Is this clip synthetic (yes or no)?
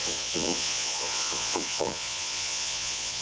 yes